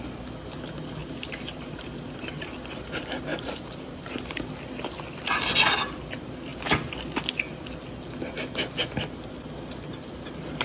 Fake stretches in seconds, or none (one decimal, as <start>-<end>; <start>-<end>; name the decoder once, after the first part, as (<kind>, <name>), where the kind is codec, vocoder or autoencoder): 1.0-2.3 (vocoder, BigVGAN v2); 3.3-4.5